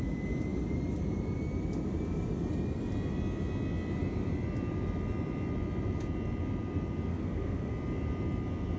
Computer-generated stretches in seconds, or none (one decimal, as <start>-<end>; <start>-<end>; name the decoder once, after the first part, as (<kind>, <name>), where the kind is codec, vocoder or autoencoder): 7.1-7.7 (codec, SNAC)